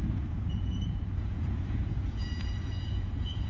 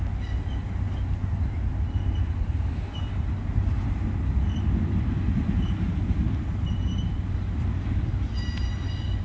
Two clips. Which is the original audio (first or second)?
second